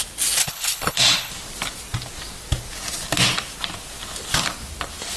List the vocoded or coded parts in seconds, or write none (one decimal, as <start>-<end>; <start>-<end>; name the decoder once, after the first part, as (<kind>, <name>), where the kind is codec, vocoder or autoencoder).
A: 0.4-1.3 (codec, HILCodec)